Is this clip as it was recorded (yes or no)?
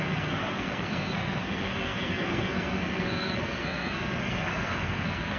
no